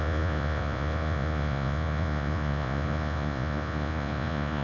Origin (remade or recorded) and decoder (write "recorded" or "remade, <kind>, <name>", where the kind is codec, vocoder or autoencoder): remade, vocoder, Vocos